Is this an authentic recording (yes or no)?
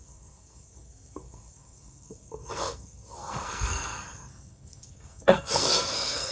no